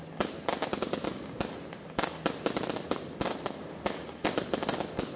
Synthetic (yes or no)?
no